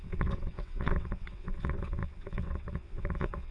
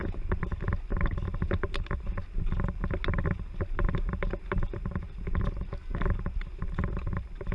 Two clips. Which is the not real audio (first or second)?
first